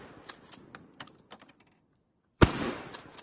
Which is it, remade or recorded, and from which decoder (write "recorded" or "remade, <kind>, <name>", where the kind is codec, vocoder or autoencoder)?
remade, vocoder, BigVGAN v2